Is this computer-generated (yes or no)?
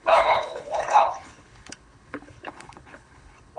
yes